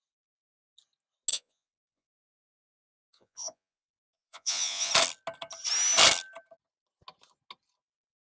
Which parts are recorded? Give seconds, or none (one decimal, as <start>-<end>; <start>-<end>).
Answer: 0.0-1.3; 4.9-8.2